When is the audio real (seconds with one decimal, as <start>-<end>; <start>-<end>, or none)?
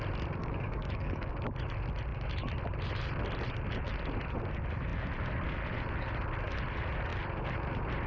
0.0-0.4; 1.3-8.1